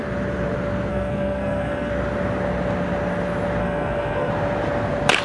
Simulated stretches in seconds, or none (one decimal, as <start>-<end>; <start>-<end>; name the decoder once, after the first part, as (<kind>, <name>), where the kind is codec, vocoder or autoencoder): 0.9-1.9 (codec, SNAC); 3.6-4.3